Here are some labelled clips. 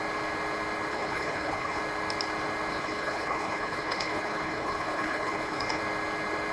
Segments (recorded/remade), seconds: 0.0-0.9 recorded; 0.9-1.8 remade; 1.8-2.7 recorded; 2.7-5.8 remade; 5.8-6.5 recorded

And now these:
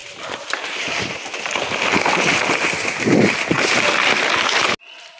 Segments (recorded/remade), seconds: 0.0-1.2 remade; 1.2-5.2 recorded

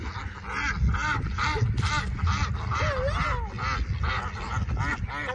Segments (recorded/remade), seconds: 0.0-5.3 recorded

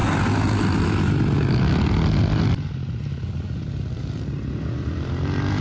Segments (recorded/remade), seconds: 0.0-5.6 recorded